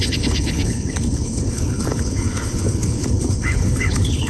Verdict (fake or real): fake